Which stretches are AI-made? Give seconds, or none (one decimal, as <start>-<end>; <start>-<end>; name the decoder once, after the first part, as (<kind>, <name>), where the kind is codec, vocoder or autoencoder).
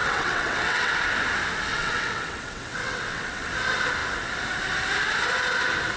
0.0-0.9 (vocoder, WaveNeXt); 1.7-3.5